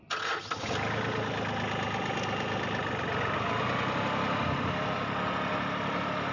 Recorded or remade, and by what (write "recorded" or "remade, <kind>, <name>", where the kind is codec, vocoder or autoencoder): recorded